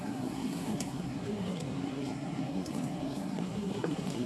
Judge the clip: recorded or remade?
remade